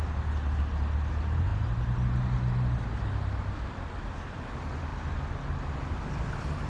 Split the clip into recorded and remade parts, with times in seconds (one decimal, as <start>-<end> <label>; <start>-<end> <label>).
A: 0.0-6.7 recorded